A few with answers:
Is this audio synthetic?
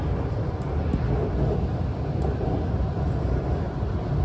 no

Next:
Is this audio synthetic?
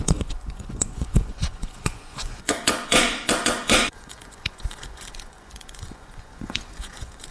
yes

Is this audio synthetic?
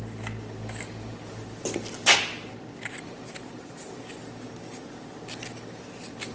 no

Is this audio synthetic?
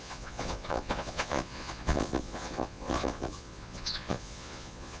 yes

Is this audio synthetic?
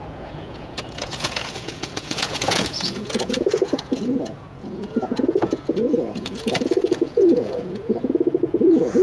yes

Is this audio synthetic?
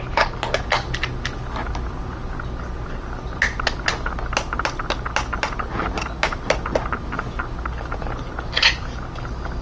no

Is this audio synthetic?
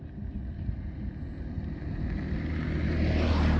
no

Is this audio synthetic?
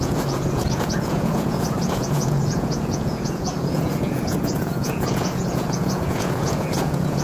yes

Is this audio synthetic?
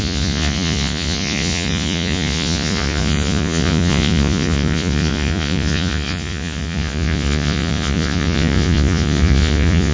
yes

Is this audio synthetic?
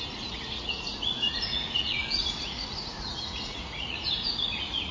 yes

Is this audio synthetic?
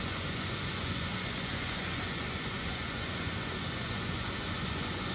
yes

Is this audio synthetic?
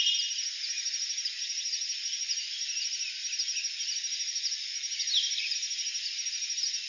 no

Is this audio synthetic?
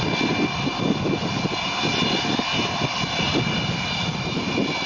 no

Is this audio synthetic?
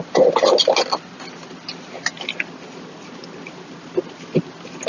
no